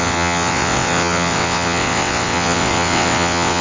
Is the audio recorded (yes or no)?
no